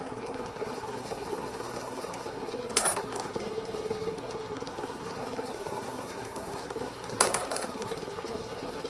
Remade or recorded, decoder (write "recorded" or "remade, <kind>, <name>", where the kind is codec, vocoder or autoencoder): remade, codec, SNAC